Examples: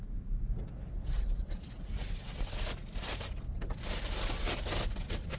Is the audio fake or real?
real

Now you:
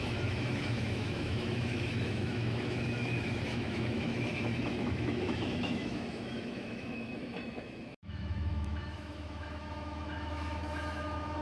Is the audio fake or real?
fake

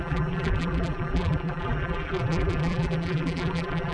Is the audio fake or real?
fake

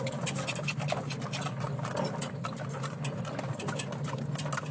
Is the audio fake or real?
real